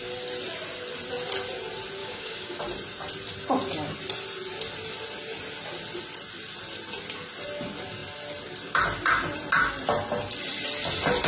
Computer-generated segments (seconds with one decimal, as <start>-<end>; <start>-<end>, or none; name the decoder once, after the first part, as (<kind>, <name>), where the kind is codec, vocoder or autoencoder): 2.0-2.6 (codec, DAC)

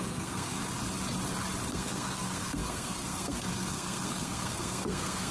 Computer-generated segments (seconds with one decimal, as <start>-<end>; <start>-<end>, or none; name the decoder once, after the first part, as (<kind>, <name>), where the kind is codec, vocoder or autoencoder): 0.0-0.6 (codec, SNAC); 1.7-5.3

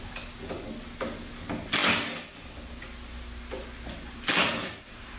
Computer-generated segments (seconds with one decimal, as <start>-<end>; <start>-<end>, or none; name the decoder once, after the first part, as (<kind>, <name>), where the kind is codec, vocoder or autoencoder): none

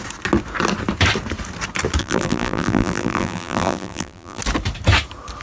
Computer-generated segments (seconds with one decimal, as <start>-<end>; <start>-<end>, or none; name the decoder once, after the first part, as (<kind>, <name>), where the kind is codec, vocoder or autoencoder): 2.0-4.4 (vocoder, BigVGAN v2)